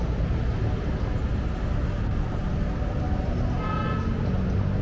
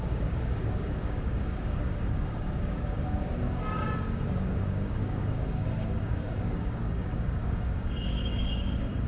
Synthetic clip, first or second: second